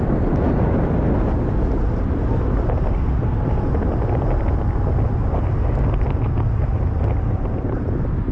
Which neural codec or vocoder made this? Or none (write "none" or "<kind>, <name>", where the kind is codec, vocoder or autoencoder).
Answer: none